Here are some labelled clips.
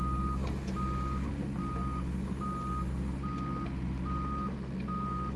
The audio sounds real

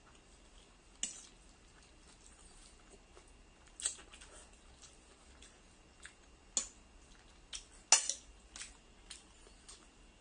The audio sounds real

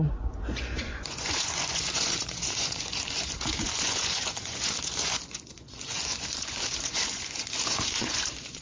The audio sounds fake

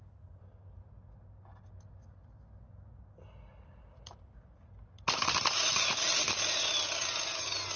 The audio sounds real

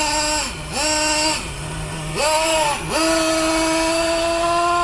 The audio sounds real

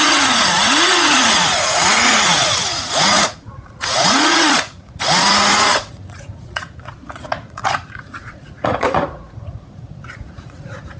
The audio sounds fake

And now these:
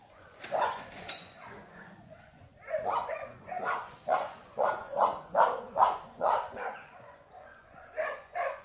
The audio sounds fake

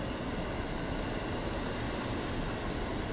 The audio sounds real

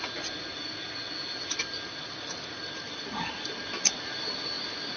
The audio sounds real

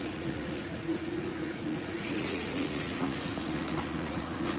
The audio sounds fake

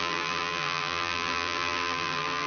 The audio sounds fake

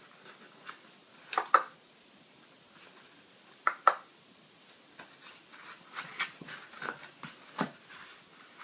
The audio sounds real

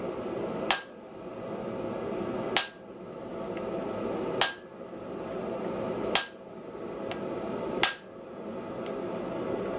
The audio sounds real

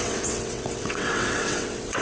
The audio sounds fake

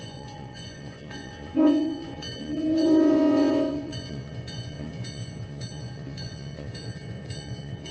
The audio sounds fake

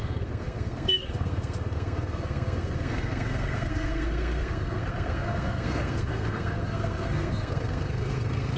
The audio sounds fake